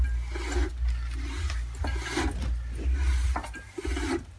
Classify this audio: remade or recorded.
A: recorded